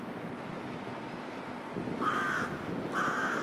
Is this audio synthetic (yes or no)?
no